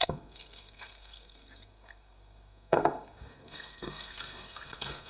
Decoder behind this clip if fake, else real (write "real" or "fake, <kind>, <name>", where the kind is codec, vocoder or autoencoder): fake, codec, SNAC